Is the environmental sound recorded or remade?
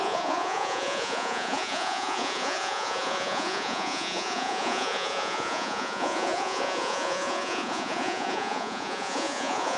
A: remade